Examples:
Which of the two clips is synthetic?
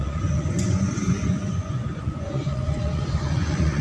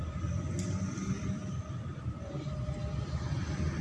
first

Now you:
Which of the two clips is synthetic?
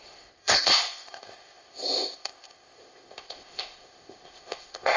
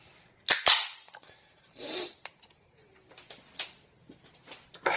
first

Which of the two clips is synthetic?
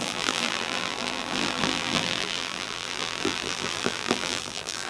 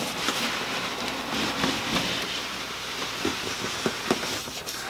first